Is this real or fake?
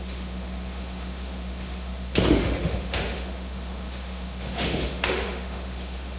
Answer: fake